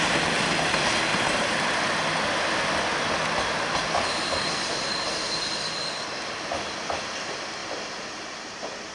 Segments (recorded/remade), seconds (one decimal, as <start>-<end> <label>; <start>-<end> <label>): 0.0-1.1 recorded; 1.1-1.8 remade; 1.8-3.8 recorded; 3.8-5.2 remade; 5.2-8.9 recorded